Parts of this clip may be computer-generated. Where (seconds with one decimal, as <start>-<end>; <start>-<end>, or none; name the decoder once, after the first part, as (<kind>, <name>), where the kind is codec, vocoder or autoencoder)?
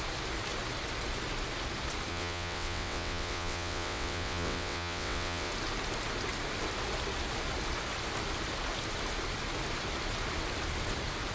2.1-5.5 (vocoder, WaveNeXt)